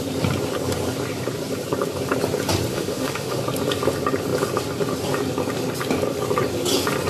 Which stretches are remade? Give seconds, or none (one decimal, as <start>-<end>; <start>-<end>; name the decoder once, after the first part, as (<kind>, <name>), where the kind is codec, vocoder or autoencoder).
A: 2.7-3.4 (autoencoder, DAC-VAE)